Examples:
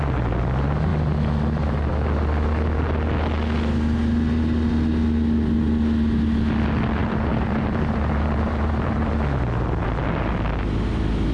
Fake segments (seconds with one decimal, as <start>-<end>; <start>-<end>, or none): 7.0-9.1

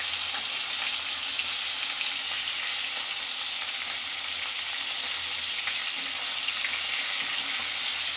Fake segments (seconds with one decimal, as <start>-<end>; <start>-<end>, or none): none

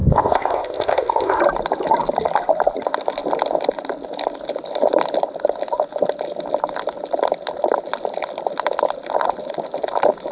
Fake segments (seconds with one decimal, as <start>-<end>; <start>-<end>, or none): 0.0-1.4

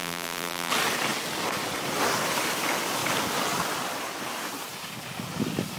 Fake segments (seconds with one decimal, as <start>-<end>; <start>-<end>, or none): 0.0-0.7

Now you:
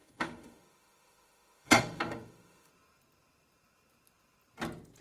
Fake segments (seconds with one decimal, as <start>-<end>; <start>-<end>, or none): 0.0-2.7